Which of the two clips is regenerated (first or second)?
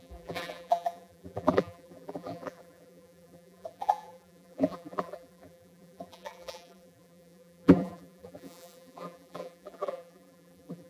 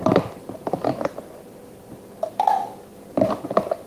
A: first